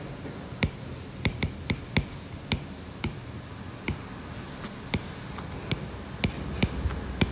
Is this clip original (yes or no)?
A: yes